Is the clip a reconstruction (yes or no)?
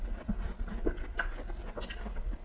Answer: no